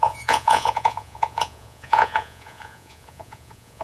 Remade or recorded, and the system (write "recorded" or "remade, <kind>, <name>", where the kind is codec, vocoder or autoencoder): remade, vocoder, Vocos